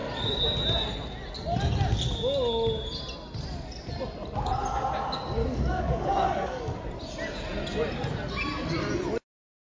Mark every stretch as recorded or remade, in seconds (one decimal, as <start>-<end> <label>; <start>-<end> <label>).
0.0-5.4 recorded; 5.4-6.8 remade; 6.8-9.7 recorded